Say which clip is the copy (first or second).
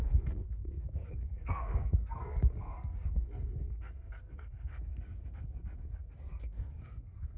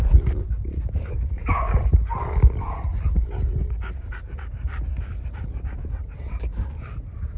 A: first